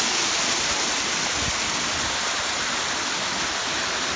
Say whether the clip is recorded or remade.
recorded